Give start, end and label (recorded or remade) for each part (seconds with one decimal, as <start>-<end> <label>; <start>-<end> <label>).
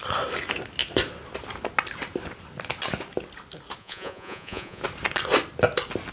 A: 0.0-3.8 recorded; 3.8-4.8 remade; 4.8-6.1 recorded